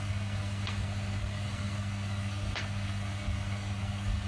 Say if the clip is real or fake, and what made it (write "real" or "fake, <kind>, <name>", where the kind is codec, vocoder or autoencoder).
fake, codec, SNAC